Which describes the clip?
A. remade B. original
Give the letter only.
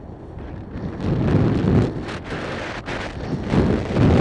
B